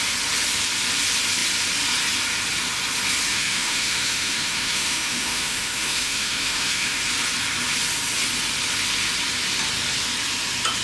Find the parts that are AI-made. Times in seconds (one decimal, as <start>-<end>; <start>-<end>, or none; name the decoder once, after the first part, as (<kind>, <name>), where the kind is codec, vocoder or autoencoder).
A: 3.3-7.0 (autoencoder, DAC-VAE)